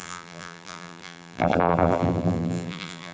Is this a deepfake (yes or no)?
yes